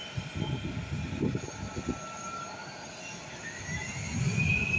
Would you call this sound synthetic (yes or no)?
no